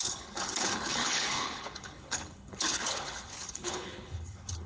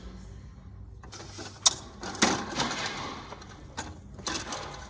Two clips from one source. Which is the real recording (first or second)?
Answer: second